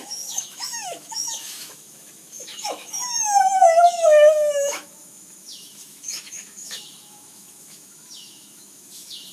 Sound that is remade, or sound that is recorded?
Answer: remade